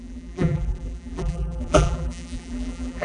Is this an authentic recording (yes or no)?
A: no